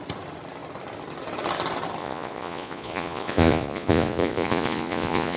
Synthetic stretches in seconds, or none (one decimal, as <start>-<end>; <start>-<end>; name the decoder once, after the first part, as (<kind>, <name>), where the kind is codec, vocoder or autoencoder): 2.0-5.4 (vocoder, Vocos)